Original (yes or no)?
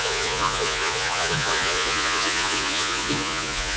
no